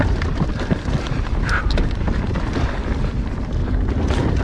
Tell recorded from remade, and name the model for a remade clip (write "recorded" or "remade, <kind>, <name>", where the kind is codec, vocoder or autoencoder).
recorded